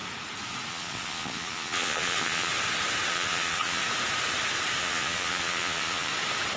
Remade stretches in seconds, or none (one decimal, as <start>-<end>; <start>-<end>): 0.7-2.5; 3.1-3.8; 4.8-6.1